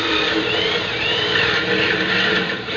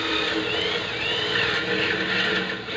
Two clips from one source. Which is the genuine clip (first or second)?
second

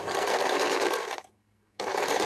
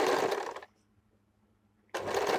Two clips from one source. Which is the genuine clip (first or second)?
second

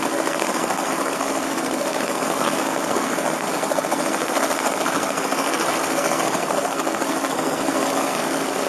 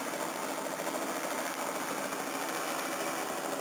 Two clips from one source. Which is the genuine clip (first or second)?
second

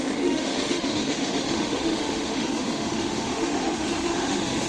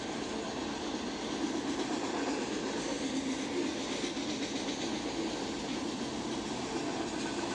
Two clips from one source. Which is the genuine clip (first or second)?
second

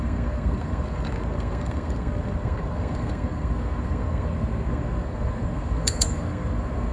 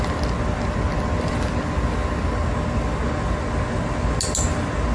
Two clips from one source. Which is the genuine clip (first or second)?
second